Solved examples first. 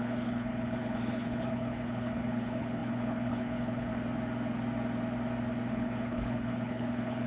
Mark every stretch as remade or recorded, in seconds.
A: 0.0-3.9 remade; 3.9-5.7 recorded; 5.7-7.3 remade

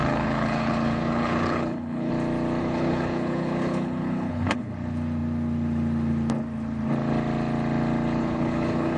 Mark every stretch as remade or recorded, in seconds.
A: 0.0-2.1 remade; 2.1-2.6 recorded; 2.6-4.7 remade; 4.7-8.2 recorded; 8.2-9.0 remade